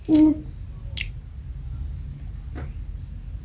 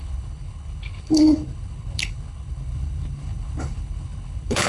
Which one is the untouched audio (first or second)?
first